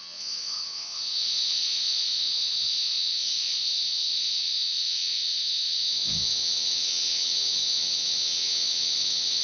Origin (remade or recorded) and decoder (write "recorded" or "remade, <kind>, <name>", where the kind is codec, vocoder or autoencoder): remade, vocoder, WaveNeXt